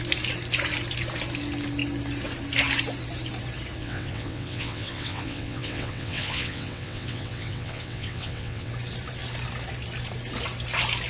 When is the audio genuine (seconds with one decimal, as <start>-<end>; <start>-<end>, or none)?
0.0-3.8; 8.7-11.1